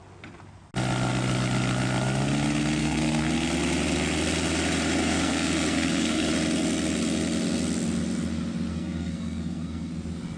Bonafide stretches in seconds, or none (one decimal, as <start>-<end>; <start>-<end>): 0.0-2.8; 3.3-5.0; 6.3-8.7; 9.9-10.4